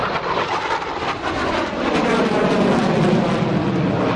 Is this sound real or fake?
real